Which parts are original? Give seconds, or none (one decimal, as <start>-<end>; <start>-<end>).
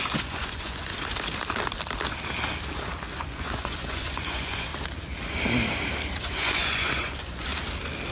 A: 0.9-3.2; 4.7-6.2; 7.5-8.1